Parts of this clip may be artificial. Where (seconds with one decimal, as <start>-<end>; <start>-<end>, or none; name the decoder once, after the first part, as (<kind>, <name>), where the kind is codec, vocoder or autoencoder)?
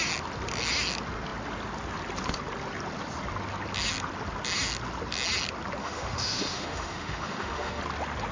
5.8-7.8 (autoencoder, DAC-VAE)